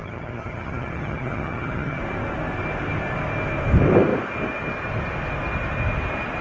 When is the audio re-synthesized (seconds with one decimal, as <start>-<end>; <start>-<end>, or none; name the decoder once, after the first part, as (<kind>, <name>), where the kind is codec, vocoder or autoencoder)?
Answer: 0.0-2.0 (vocoder, HiFi-GAN)